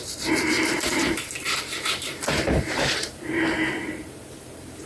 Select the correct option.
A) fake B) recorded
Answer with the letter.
A